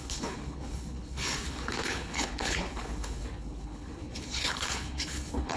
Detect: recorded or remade remade